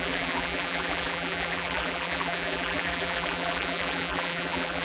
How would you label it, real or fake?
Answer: fake